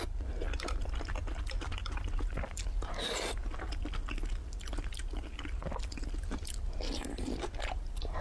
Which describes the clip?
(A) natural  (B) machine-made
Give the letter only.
A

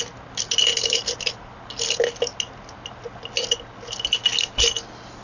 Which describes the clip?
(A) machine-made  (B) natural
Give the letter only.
B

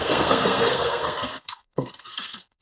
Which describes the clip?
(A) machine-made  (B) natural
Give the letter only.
A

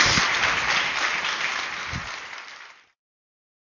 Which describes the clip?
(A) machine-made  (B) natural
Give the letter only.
B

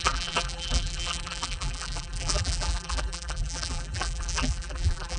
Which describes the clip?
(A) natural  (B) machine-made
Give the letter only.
B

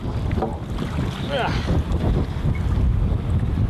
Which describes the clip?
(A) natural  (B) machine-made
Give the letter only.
A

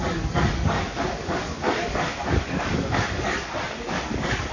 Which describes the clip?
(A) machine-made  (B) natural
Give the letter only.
A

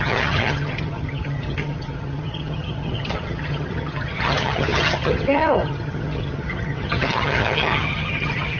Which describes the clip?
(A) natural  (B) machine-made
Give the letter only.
B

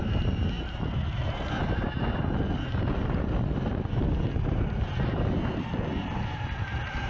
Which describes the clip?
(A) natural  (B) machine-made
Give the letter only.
A